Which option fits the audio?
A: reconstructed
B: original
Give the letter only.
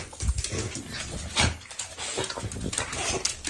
B